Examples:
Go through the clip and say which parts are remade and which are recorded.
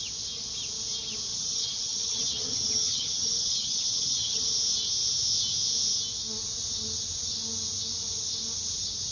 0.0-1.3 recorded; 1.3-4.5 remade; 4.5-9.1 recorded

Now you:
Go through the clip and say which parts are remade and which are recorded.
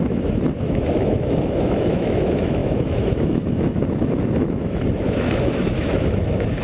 0.0-6.6 remade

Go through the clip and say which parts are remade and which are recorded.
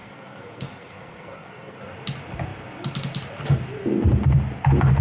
0.0-1.8 remade; 1.8-5.0 recorded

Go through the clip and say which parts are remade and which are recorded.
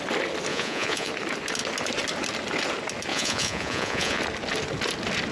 0.0-0.5 recorded; 0.5-1.1 remade; 1.1-3.1 recorded; 3.1-4.2 remade; 4.2-5.3 recorded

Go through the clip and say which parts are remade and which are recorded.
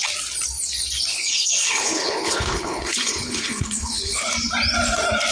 0.0-1.1 recorded; 1.1-4.3 remade; 4.3-5.3 recorded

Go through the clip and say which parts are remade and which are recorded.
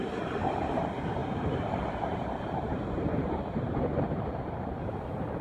0.0-5.4 remade